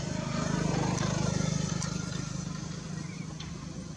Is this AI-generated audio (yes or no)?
no